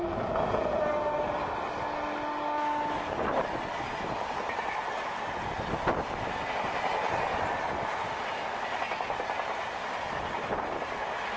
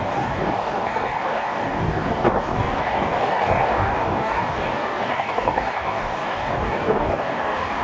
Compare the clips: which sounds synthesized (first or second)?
second